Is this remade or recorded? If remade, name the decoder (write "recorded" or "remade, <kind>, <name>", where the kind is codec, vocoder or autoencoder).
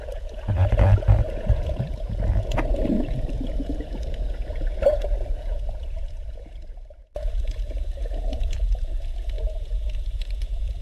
remade, vocoder, Vocos